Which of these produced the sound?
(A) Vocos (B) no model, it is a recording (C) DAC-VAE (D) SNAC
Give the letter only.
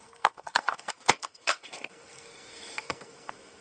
D